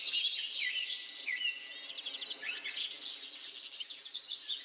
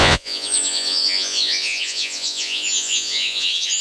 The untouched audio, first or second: first